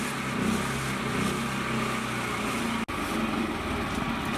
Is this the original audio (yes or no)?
yes